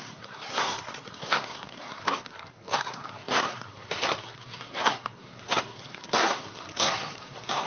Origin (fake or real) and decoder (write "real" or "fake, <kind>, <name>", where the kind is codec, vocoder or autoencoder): fake, codec, SNAC